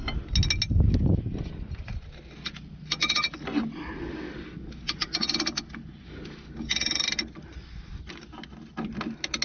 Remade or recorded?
recorded